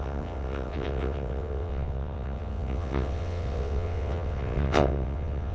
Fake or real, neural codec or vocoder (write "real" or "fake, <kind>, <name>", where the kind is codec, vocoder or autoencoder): fake, vocoder, WaveNeXt